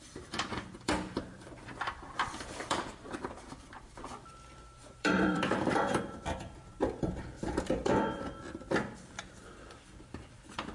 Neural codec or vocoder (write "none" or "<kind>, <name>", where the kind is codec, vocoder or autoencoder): vocoder, BigVGAN v2